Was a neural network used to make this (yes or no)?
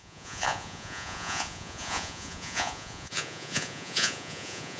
yes